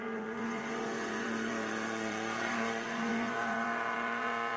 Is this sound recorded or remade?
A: remade